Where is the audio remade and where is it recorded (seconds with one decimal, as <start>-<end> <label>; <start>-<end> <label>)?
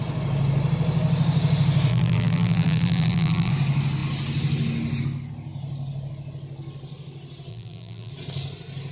0.0-1.9 recorded; 1.9-3.5 remade; 3.5-7.5 recorded; 7.5-8.1 remade; 8.1-8.9 recorded